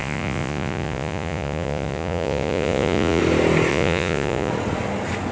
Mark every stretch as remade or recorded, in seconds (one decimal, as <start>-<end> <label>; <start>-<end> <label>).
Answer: 0.0-3.2 remade; 3.2-3.7 recorded; 3.7-4.5 remade; 4.5-5.3 recorded